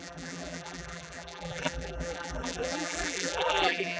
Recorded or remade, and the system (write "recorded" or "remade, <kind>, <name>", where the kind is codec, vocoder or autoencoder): remade, vocoder, BigVGAN v2